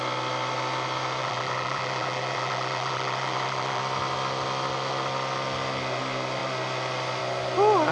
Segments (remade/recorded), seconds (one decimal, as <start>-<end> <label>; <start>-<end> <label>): 0.0-1.2 recorded; 1.2-3.8 remade; 3.8-7.9 recorded